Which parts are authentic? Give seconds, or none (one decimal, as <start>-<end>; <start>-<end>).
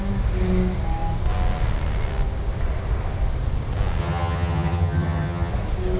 0.0-4.0; 5.5-6.0